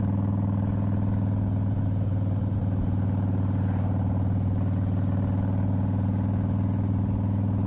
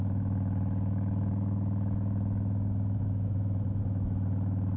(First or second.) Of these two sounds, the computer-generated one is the second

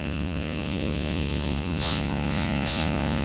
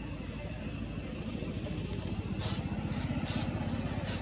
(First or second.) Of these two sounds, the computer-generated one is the first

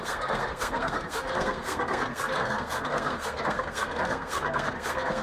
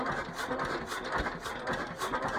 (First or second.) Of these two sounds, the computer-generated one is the first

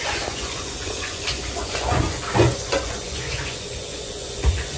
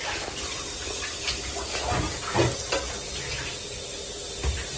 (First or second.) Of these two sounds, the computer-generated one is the first